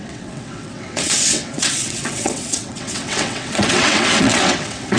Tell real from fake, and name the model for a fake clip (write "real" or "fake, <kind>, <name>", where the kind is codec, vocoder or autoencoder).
fake, vocoder, WaveNeXt